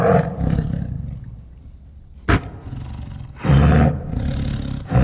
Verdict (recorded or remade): recorded